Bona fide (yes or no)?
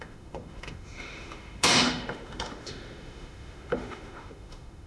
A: no